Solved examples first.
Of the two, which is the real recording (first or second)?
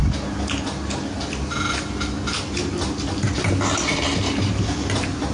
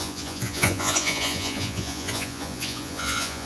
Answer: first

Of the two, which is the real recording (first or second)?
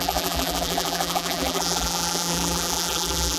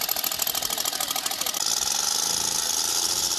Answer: second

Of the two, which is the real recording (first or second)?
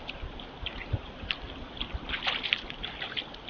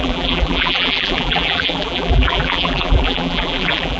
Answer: first